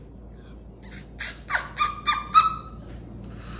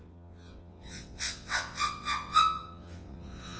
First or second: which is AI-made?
second